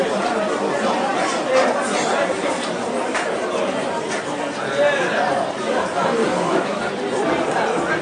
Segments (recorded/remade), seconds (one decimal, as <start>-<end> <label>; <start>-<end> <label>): 0.0-6.2 recorded; 6.2-6.8 remade; 6.8-8.0 recorded